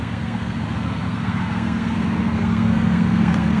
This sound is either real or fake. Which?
fake